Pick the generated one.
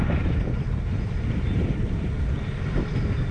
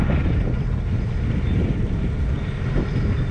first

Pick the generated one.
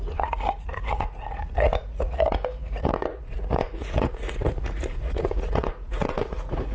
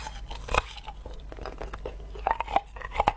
first